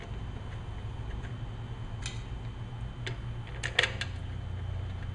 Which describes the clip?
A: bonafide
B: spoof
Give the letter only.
A